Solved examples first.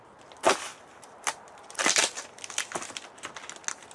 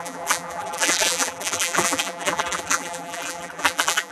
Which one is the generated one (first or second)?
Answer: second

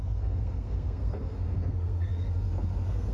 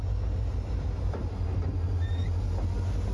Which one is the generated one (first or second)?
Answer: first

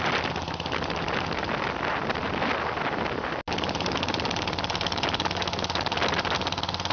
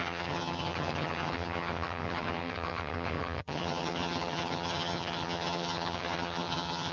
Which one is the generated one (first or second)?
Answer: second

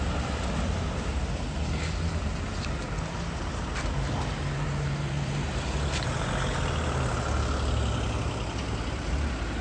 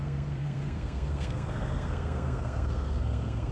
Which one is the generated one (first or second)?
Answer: second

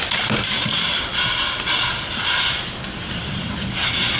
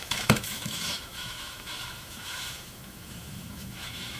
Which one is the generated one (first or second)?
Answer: second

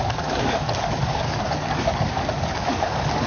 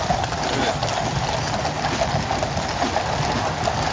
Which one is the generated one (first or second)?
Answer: first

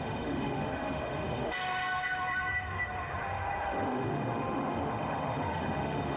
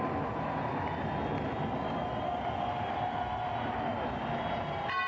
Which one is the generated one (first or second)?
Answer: first